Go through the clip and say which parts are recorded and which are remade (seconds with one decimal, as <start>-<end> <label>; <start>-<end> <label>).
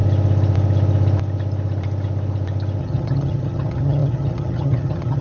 0.0-2.8 recorded; 2.8-5.2 remade